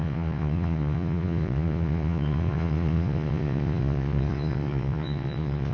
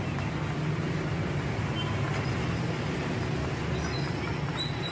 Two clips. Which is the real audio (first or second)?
second